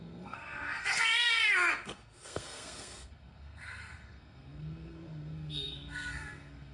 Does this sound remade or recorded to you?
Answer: remade